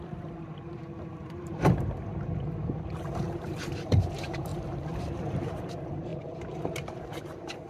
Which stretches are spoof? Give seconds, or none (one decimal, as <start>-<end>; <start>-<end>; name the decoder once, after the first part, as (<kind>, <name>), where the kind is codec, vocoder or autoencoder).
0.0-2.1 (vocoder, BigVGAN v2); 3.2-7.7